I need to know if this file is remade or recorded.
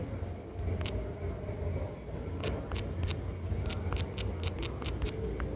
recorded